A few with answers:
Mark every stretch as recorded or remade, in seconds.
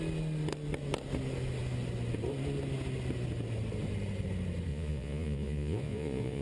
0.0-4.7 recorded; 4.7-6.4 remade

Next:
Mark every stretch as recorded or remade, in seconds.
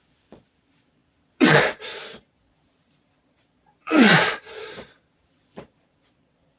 0.0-6.6 remade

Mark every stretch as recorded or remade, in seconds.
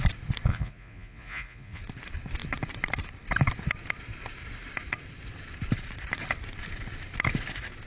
0.0-0.5 recorded; 0.5-1.8 remade; 1.8-7.9 recorded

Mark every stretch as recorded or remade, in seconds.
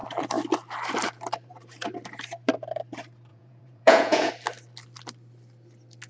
0.0-3.3 recorded; 3.3-4.3 remade; 4.3-6.1 recorded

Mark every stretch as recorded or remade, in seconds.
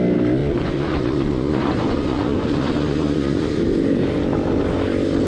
0.0-0.4 recorded; 0.4-3.6 remade; 3.6-5.3 recorded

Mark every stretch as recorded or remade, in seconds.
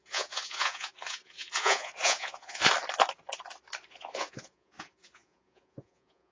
0.0-2.6 remade; 2.6-3.9 recorded; 3.9-6.3 remade